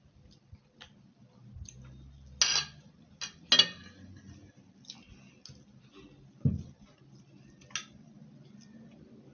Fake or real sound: real